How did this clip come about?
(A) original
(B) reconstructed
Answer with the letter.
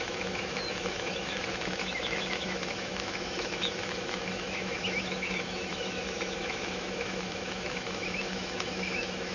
B